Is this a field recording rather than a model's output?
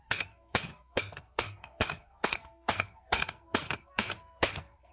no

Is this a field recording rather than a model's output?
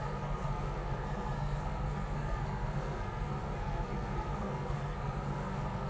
no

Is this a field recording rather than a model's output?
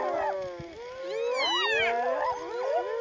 yes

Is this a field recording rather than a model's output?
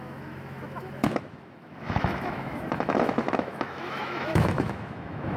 no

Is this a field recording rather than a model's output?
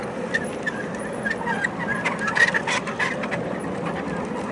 yes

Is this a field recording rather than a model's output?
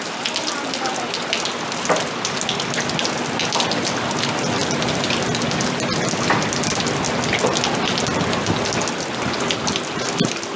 yes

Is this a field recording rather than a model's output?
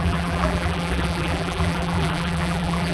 no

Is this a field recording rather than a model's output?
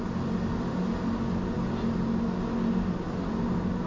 yes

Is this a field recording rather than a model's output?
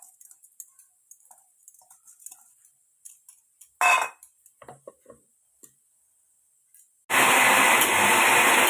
yes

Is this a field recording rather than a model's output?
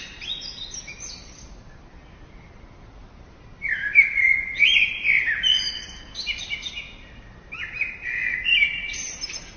yes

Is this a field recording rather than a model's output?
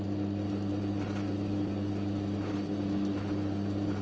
yes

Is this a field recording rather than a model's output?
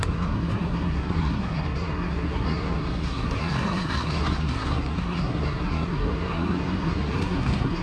no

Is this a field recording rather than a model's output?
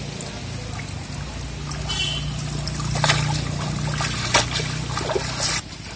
yes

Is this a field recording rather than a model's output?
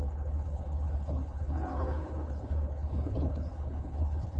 no